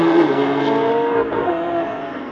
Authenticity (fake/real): fake